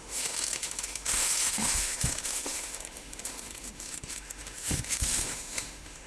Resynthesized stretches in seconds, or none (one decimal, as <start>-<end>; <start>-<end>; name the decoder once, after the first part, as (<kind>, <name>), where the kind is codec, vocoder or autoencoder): 0.0-6.1 (autoencoder, DAC-VAE)